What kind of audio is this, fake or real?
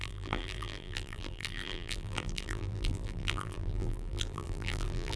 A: fake